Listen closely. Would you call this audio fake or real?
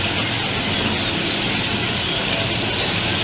real